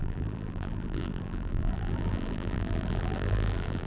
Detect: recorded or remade remade